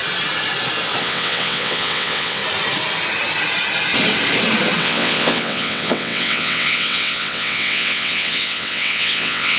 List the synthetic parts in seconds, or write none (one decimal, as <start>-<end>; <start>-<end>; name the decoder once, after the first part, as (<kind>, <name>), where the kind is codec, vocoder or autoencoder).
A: 1.0-2.4 (vocoder, WaveNeXt); 4.8-9.6